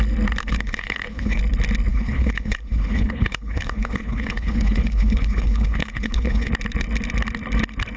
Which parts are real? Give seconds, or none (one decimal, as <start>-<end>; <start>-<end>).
0.0-0.4; 1.4-1.9; 6.5-8.0